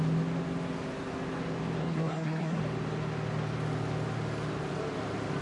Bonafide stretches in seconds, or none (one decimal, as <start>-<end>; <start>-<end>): 0.0-1.8; 2.6-5.4